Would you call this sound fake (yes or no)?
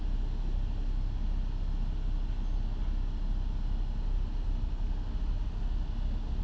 no